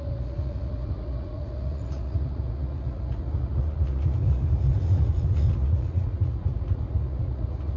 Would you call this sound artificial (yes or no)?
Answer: yes